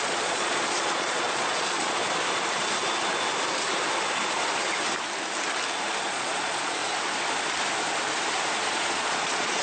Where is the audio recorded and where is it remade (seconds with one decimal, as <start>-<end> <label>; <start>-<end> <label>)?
0.0-2.0 remade; 2.0-6.1 recorded; 6.1-6.8 remade; 6.8-8.7 recorded; 8.7-9.6 remade